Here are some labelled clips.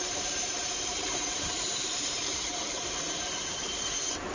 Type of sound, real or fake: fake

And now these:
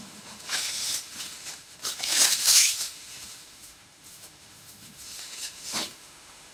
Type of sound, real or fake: fake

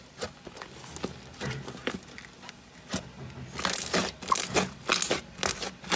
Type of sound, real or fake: real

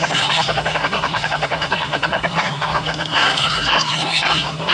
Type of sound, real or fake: fake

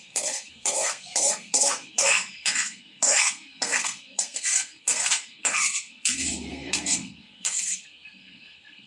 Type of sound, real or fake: fake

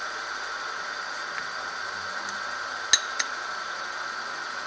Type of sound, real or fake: real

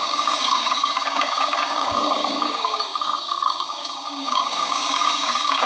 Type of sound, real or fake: fake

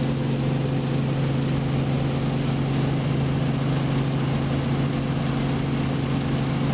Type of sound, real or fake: real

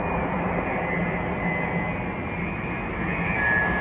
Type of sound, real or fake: real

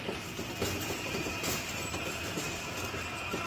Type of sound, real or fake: real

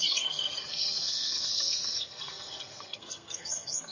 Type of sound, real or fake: fake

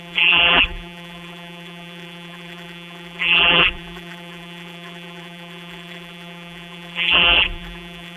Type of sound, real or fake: fake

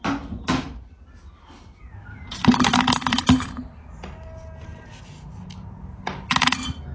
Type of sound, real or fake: real